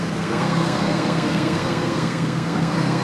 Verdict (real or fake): fake